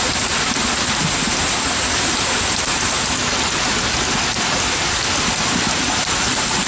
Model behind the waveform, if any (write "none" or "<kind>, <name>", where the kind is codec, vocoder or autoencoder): none